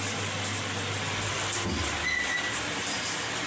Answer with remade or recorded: recorded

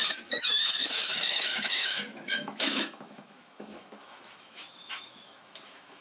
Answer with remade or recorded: remade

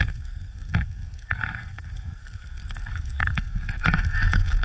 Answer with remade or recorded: remade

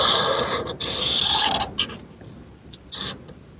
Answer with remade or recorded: recorded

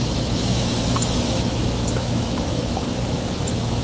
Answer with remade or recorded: remade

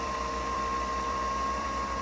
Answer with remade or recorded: remade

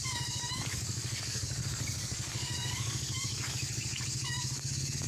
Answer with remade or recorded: remade